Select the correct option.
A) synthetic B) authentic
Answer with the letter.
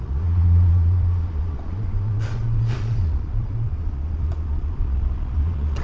A